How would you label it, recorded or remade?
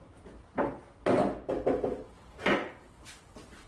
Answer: recorded